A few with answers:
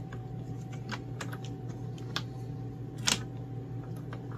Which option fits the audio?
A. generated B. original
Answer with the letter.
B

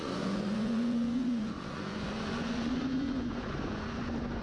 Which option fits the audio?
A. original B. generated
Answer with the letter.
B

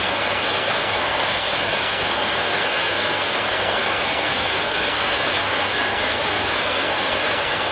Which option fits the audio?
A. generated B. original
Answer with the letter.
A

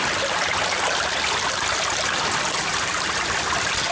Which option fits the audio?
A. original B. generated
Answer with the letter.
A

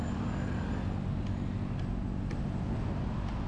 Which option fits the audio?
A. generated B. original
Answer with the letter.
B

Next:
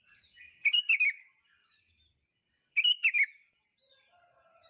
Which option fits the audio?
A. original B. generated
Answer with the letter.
A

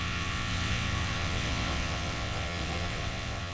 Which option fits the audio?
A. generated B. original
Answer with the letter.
A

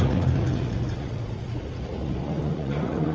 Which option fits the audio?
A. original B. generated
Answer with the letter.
B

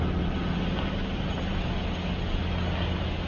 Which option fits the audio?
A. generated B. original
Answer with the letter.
B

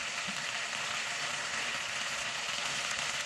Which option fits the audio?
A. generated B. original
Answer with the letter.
B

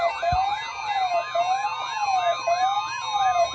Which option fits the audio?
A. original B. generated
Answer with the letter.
A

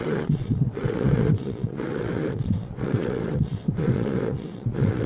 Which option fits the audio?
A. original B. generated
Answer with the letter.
B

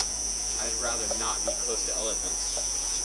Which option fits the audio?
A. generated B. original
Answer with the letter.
A